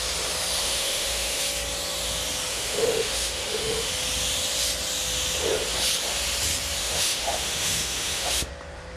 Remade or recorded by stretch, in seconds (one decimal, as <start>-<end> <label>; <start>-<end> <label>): 0.0-0.6 recorded; 0.6-1.4 remade; 1.4-2.5 recorded; 2.5-3.9 remade; 3.9-6.8 recorded; 6.8-8.5 remade; 8.5-9.0 recorded